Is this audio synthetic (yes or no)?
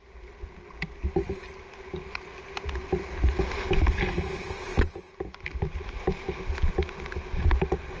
no